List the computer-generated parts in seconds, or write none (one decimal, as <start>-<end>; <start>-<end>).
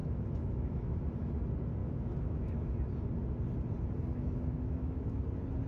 0.0-1.0; 1.8-2.7; 4.1-5.2